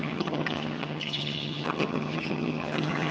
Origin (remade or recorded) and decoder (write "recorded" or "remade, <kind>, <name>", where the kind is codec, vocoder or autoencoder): remade, vocoder, HiFi-GAN